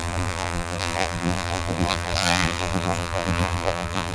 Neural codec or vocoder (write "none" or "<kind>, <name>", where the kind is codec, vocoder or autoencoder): vocoder, BigVGAN v2